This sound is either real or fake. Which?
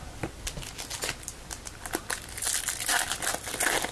real